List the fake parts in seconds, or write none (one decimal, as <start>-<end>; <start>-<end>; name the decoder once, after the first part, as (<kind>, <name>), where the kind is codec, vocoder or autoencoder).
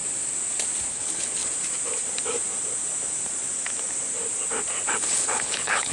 0.9-1.4 (codec, HILCodec); 4.9-5.9